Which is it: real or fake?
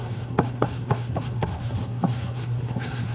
fake